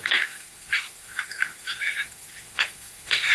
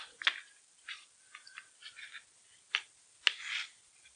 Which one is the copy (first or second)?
first